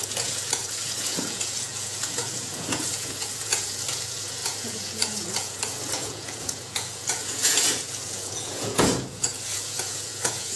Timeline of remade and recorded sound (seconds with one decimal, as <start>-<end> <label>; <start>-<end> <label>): 0.0-10.6 remade